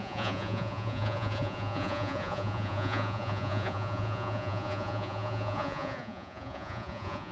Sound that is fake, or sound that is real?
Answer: fake